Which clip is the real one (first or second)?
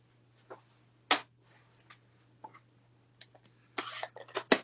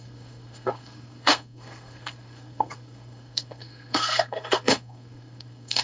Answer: first